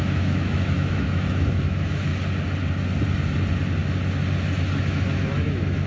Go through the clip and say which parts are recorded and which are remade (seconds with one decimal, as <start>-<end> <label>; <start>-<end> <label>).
0.0-2.1 remade; 2.1-4.8 recorded; 4.8-5.9 remade